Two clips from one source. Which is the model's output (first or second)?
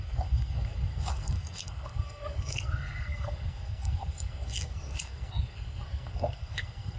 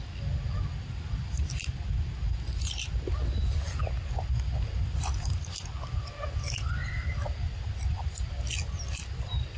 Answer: first